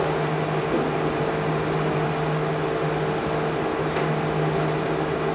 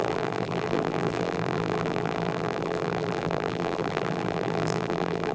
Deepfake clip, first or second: second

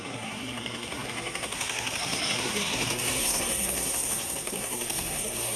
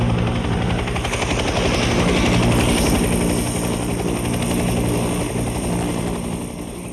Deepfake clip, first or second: first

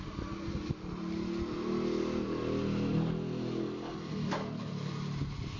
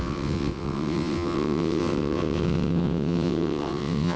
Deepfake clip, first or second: second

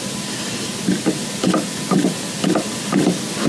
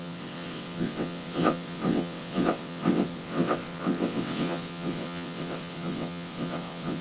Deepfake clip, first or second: second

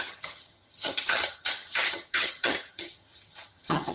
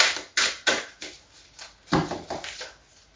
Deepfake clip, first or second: first